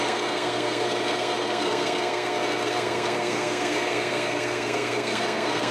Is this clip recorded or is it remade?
remade